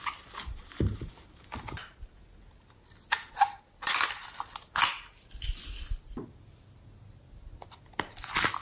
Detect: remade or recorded recorded